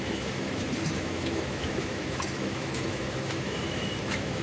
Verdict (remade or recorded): remade